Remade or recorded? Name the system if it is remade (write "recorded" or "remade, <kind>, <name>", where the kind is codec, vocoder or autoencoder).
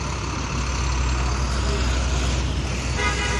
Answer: recorded